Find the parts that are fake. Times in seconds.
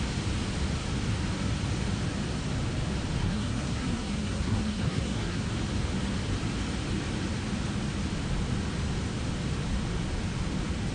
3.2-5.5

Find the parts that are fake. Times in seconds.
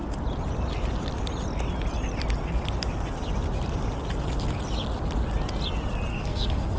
6.1-6.8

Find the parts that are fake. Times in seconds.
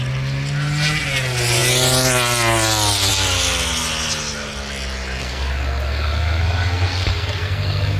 5.2-8.0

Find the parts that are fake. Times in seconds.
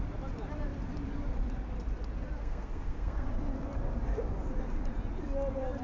2.4-3.3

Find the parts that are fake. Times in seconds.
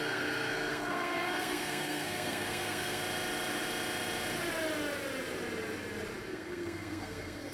0.0-3.0; 6.3-7.5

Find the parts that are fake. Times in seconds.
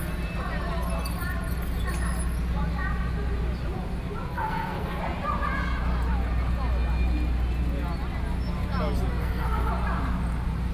4.3-5.0; 9.2-9.7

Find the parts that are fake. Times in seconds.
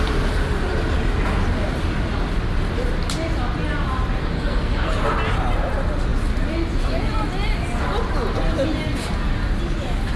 4.2-4.9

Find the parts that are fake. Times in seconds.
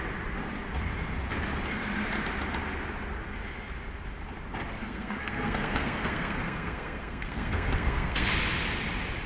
4.8-8.3